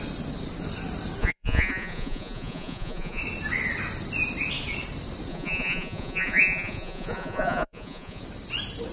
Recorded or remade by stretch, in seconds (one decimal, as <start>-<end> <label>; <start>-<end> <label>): 0.0-1.2 recorded; 1.2-3.2 remade; 3.2-5.3 recorded; 5.3-8.2 remade; 8.2-8.9 recorded